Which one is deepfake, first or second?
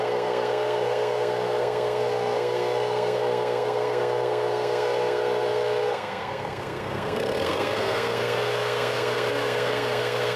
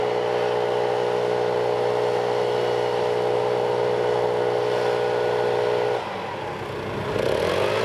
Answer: first